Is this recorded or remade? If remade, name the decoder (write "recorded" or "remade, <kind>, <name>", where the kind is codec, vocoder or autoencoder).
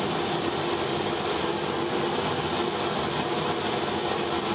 recorded